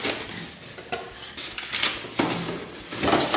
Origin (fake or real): real